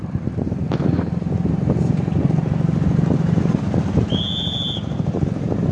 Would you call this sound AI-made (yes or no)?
no